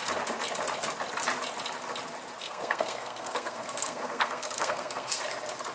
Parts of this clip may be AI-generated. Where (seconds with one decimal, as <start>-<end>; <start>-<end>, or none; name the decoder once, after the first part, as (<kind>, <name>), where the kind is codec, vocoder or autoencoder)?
2.4-5.2 (codec, SNAC)